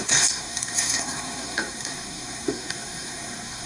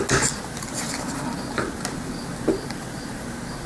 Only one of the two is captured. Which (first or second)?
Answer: second